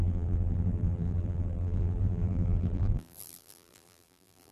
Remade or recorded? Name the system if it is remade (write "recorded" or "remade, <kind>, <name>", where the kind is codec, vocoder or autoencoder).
remade, vocoder, BigVGAN v2